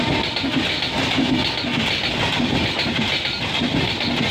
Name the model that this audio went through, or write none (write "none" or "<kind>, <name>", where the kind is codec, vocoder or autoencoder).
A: none